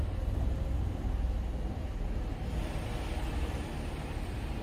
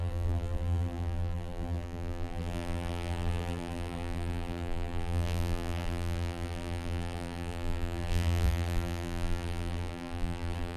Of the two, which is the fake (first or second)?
second